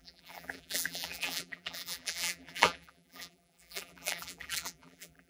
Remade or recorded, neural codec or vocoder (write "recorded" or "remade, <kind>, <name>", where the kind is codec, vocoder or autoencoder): remade, vocoder, BigVGAN v2